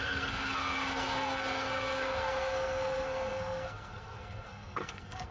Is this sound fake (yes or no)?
yes